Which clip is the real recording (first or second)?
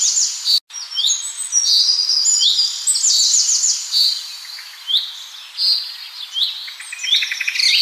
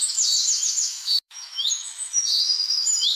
first